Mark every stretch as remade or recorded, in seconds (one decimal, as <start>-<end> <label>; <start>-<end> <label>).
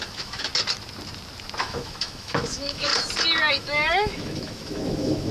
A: 0.0-0.5 remade; 0.5-1.6 recorded; 1.6-2.9 remade; 2.9-3.5 recorded; 3.5-5.3 remade